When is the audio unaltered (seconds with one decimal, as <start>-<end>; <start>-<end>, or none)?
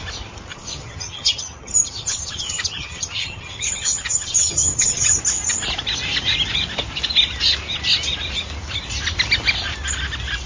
0.0-0.5; 5.2-10.5